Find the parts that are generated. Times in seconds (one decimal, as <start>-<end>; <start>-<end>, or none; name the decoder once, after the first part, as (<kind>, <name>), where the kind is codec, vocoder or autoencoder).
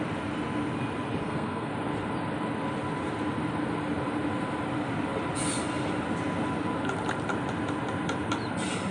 1.2-1.7 (codec, SNAC)